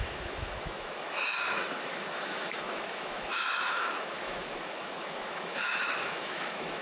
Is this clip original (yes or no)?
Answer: no